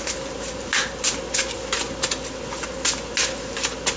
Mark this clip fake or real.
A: real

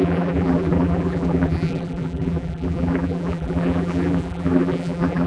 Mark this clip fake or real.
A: fake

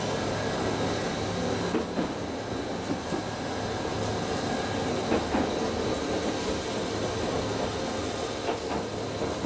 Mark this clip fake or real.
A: real